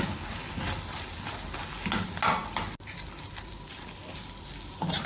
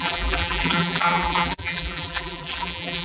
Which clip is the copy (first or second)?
second